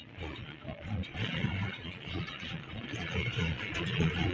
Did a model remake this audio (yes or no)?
yes